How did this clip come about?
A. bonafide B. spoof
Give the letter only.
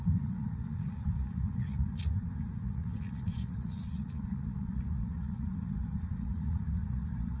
B